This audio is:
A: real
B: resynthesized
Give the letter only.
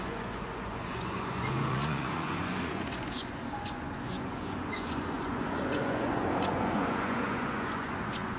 B